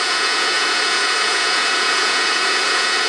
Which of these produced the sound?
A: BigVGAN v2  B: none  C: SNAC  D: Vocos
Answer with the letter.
D